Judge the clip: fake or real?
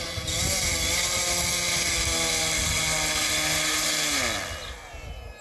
real